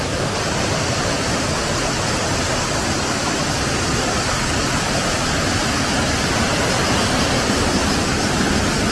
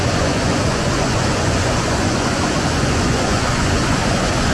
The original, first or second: first